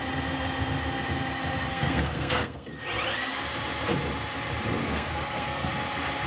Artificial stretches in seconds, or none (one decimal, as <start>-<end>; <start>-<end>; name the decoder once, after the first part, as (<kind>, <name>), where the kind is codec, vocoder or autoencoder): 1.7-2.7 (codec, SNAC); 4.8-5.7